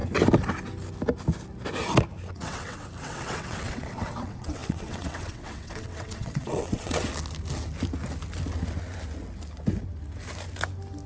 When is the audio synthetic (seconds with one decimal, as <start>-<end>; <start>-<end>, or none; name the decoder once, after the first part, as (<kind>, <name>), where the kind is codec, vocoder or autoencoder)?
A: 2.3-7.1 (vocoder, WaveNeXt)